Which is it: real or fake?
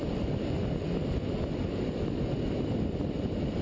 real